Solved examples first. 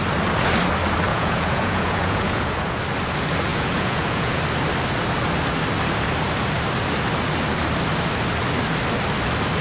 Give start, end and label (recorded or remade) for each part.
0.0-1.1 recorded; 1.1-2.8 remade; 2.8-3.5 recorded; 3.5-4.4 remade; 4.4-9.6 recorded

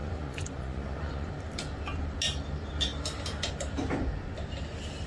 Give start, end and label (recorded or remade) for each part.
0.0-1.3 remade; 1.3-5.1 recorded

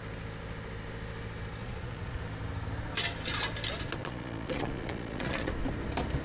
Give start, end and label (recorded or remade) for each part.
0.0-1.6 recorded; 1.6-2.2 remade; 2.2-4.0 recorded; 4.0-5.5 remade; 5.5-6.2 recorded

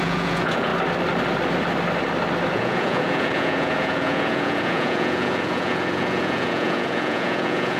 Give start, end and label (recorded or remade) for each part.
0.0-0.7 remade; 0.7-2.5 recorded; 2.5-7.8 remade

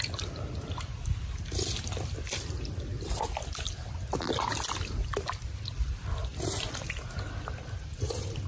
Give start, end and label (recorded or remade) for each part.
0.0-8.5 recorded

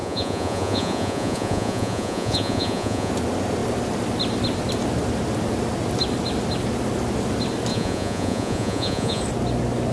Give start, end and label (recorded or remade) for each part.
0.0-3.1 remade; 3.1-7.7 recorded; 7.7-9.2 remade; 9.2-9.9 recorded

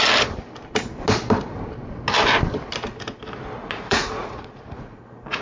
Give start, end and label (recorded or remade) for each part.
0.0-3.6 recorded; 3.6-5.0 remade; 5.0-5.4 recorded